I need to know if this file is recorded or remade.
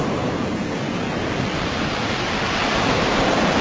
recorded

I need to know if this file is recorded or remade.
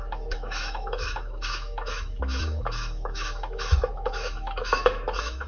remade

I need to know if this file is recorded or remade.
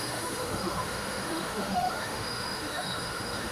remade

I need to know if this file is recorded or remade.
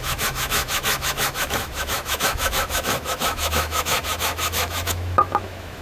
remade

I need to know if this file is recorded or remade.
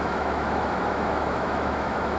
remade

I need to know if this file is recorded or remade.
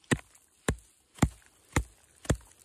recorded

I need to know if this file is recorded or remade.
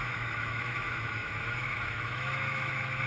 remade